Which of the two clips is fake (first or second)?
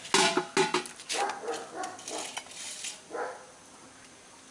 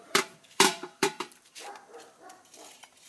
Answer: second